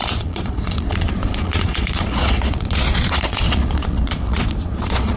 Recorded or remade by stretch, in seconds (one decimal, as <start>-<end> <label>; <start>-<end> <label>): 0.0-5.2 remade